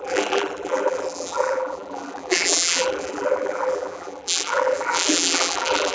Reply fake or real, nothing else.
fake